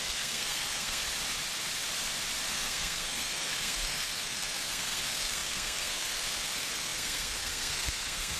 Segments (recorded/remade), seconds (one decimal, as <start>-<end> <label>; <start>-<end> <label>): 0.0-1.0 remade; 1.0-2.5 recorded; 2.5-8.4 remade